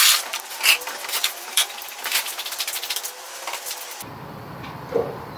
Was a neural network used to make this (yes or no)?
yes